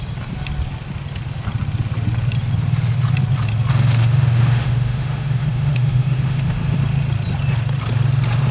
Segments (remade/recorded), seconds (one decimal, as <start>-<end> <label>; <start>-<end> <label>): 0.0-3.7 recorded; 3.7-6.8 remade; 6.8-8.5 recorded

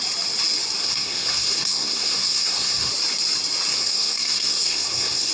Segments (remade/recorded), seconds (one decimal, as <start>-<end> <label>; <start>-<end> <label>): 0.0-0.8 recorded; 0.8-2.9 remade; 2.9-3.7 recorded; 3.7-5.3 remade